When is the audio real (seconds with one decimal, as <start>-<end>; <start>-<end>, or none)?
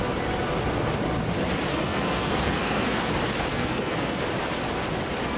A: 0.0-1.7; 3.0-3.5; 4.2-5.4